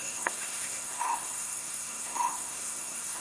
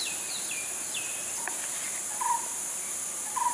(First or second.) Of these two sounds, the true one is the second